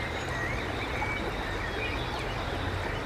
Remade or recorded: recorded